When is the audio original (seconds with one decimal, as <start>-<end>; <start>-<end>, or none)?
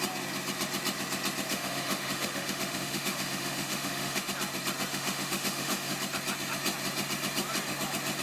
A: 0.0-1.5; 4.3-4.9; 5.9-8.2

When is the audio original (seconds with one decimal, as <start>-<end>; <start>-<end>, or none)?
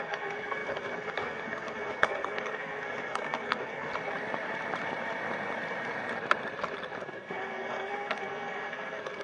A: 3.9-7.0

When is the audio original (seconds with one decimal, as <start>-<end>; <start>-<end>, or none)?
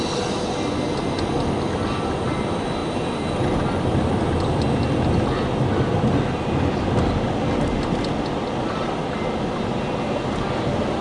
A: 0.0-11.0